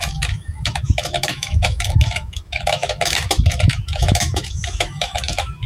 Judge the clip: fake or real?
fake